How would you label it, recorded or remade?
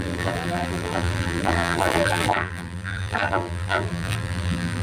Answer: remade